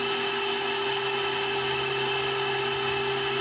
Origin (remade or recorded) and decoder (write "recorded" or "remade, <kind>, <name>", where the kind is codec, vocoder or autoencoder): recorded